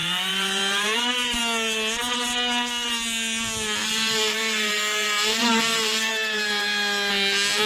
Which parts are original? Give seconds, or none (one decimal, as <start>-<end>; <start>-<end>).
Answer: 1.4-3.8; 6.1-7.7